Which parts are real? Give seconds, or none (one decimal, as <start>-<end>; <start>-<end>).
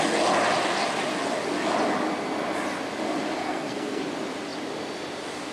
0.0-3.4; 4.0-5.5